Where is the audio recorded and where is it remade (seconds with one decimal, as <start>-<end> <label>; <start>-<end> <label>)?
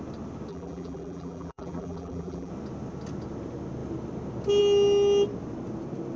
0.0-0.5 recorded; 0.5-2.5 remade; 2.5-6.2 recorded